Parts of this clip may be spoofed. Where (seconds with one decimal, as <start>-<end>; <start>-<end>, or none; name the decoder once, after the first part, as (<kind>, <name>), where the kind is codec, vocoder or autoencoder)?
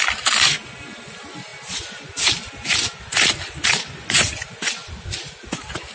none